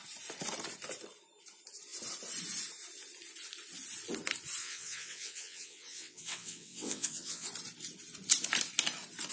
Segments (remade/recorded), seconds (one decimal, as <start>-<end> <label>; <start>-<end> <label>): 0.0-4.6 recorded; 4.6-7.5 remade; 7.5-9.3 recorded